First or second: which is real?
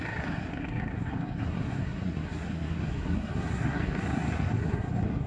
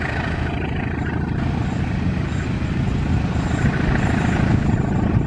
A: second